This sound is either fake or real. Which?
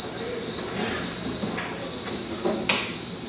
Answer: real